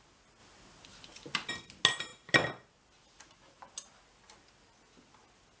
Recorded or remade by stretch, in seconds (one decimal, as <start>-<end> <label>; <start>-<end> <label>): 0.0-5.6 recorded